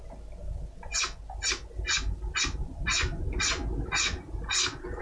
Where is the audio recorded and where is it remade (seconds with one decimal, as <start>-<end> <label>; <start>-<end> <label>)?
0.0-5.0 recorded